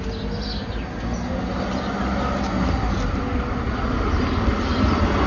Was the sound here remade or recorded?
recorded